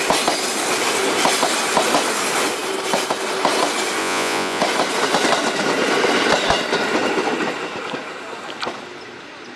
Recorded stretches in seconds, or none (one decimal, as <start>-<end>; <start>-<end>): 0.0-4.0; 4.6-9.6